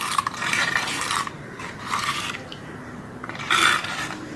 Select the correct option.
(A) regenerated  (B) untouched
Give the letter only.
A